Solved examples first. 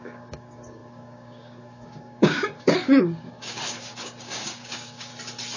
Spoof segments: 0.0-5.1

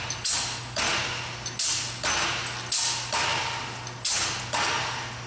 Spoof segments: none

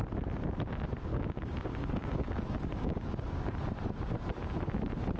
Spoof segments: 1.1-3.5

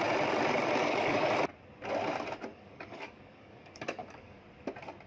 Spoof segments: 0.8-1.3; 2.5-4.4

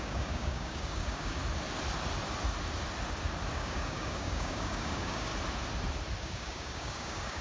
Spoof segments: 0.0-1.4; 3.5-5.3; 6.2-7.4

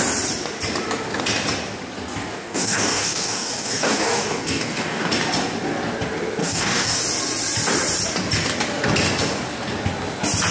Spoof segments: 2.3-5.1; 6.4-7.0

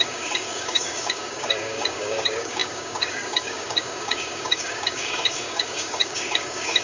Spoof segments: 0.0-6.8